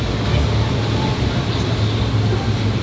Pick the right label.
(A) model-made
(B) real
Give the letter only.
B